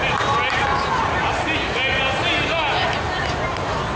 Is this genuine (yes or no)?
yes